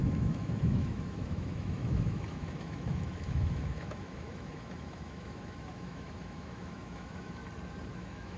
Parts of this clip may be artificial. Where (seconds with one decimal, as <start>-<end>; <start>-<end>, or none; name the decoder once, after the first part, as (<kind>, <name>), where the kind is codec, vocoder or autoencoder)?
0.0-7.4 (autoencoder, DAC-VAE); 7.9-8.4